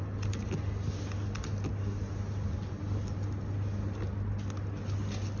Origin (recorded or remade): recorded